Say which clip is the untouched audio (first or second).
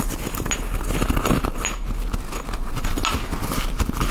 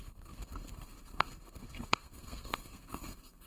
first